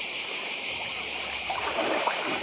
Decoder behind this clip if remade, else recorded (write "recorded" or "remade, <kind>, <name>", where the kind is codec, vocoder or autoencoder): remade, vocoder, BigVGAN v2